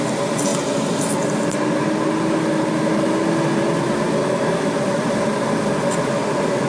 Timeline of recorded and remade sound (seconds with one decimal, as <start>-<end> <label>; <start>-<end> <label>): 0.0-6.7 recorded